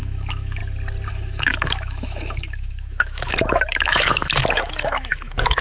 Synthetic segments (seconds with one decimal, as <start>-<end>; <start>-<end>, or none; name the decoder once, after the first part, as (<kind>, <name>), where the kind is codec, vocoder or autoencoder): 0.0-0.6 (autoencoder, DAC-VAE); 1.1-5.6